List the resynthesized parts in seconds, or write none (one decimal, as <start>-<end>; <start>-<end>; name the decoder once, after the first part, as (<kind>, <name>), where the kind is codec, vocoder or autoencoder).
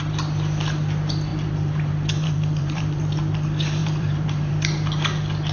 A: 1.3-3.0 (vocoder, BigVGAN v2); 3.8-4.5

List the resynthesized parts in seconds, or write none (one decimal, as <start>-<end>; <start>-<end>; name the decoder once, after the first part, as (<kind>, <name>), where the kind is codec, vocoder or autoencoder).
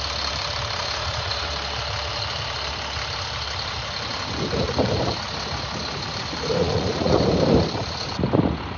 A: 0.8-1.5 (vocoder, Vocos); 6.6-7.2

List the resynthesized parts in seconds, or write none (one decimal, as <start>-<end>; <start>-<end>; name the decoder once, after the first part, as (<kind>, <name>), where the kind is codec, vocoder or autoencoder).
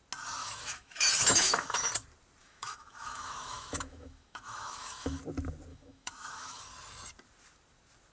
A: 0.4-1.9 (autoencoder, DAC-VAE); 2.4-5.2; 5.7-6.6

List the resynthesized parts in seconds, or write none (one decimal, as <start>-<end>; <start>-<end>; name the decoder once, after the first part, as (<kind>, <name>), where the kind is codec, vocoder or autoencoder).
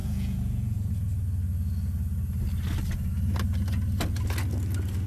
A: 0.0-0.9 (vocoder, Vocos)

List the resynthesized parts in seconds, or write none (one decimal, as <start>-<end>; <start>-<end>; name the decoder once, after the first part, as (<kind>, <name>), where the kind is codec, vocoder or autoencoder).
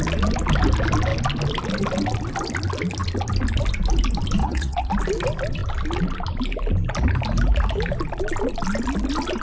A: 4.4-4.9 (vocoder, Vocos)